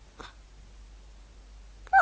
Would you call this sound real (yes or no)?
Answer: yes